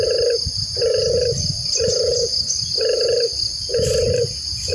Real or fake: real